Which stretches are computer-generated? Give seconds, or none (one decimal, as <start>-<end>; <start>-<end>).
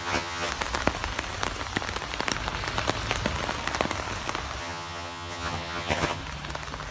0.0-0.5; 4.6-6.2